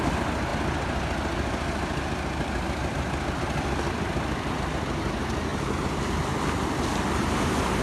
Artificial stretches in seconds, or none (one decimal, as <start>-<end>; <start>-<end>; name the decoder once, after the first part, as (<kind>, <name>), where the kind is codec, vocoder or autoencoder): none